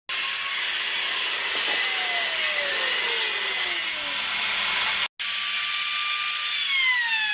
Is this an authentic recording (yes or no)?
yes